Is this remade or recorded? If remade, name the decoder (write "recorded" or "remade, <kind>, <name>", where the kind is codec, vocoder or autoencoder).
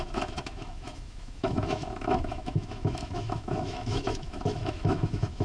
remade, autoencoder, DAC-VAE